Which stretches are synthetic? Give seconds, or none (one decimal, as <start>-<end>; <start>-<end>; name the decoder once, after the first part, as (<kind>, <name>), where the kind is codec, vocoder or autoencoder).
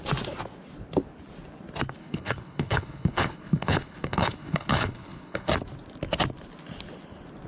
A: 2.0-5.5 (codec, HILCodec)